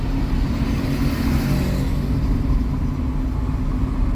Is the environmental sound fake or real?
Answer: real